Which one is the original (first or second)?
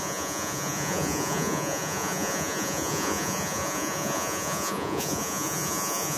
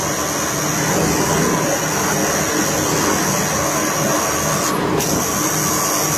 second